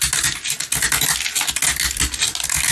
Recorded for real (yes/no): yes